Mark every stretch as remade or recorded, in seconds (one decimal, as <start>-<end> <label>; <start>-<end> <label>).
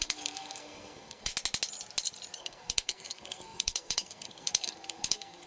0.0-1.3 remade; 1.3-2.4 recorded; 2.4-5.5 remade